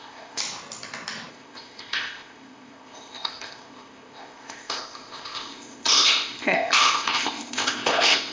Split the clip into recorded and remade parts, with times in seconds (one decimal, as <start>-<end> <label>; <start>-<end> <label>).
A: 0.0-0.4 remade; 0.4-1.3 recorded; 1.3-8.3 remade